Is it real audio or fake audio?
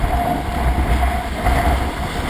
real